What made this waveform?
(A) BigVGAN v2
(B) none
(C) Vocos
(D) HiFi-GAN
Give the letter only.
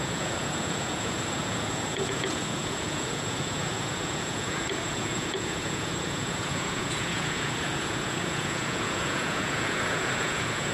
C